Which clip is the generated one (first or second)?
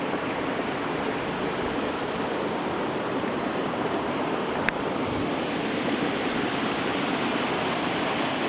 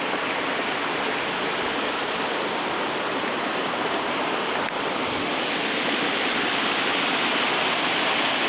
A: first